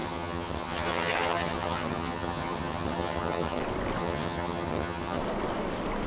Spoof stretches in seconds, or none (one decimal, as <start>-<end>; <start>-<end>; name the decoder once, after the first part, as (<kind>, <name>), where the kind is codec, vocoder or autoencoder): 0.0-3.6 (vocoder, HiFi-GAN); 4.0-5.2